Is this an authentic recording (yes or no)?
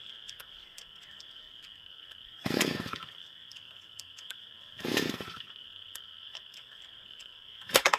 no